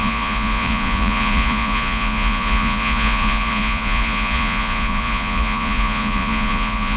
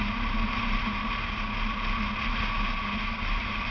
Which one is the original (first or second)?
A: second